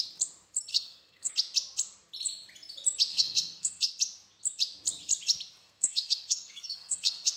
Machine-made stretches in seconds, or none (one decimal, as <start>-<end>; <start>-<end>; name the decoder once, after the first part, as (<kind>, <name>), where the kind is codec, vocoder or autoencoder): 0.7-1.3 (codec, SNAC); 3.1-3.9; 5.6-7.4